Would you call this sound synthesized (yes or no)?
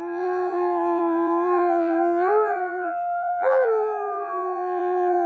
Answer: yes